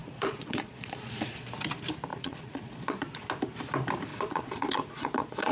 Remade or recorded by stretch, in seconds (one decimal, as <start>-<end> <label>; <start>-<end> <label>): 0.0-1.5 remade; 1.5-2.1 recorded; 2.1-3.2 remade; 3.2-4.1 recorded; 4.1-5.5 remade